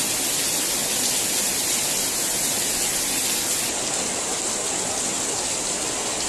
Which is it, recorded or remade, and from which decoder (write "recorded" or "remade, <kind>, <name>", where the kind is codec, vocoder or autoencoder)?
recorded